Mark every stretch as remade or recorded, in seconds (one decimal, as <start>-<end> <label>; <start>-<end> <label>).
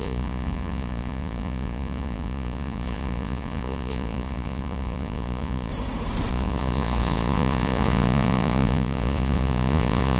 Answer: 0.0-5.7 remade; 5.7-6.3 recorded; 6.3-10.2 remade